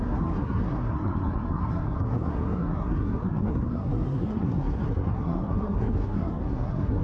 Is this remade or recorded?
remade